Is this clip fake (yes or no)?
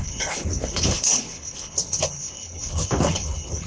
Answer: yes